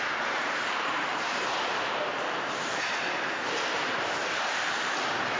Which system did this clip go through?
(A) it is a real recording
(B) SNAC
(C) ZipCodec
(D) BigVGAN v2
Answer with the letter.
D